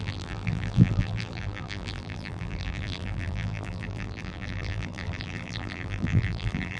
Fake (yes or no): yes